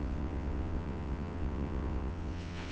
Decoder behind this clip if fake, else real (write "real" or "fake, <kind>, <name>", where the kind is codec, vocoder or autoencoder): fake, vocoder, WaveNeXt